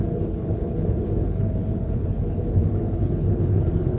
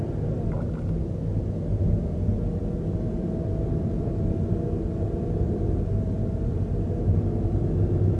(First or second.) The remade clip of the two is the first